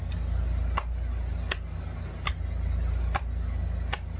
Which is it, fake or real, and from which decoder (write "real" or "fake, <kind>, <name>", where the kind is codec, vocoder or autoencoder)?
real